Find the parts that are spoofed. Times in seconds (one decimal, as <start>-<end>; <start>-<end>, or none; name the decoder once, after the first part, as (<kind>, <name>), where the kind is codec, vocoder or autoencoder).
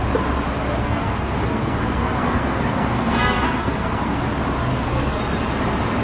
0.8-4.2 (codec, SNAC); 4.7-5.2